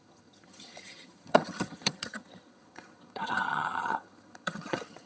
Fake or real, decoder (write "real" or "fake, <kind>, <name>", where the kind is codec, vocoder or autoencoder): fake, vocoder, HiFi-GAN